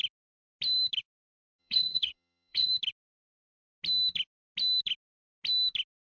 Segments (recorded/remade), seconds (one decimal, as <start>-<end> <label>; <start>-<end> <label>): 0.0-1.6 recorded; 1.6-2.7 remade; 2.7-6.1 recorded